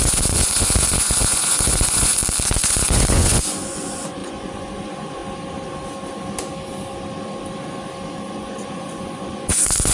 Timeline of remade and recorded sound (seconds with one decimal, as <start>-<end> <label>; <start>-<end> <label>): 0.0-2.2 remade; 2.2-2.7 recorded; 2.7-5.2 remade; 5.2-8.3 recorded; 8.3-9.9 remade